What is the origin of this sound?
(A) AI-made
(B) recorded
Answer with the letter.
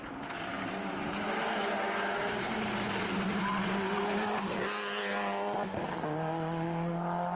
B